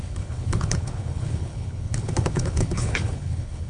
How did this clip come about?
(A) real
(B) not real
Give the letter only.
B